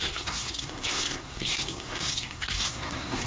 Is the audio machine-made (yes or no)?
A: yes